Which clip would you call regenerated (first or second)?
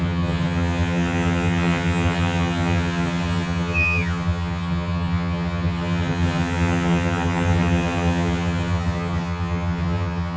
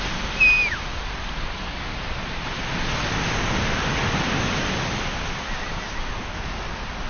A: first